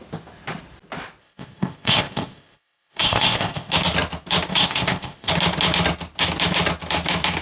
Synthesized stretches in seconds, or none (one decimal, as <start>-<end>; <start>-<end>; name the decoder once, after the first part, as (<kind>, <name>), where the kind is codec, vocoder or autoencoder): 1.2-3.7 (codec, ZipCodec); 4.5-5.3